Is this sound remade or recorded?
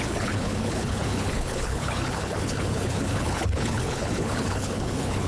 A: remade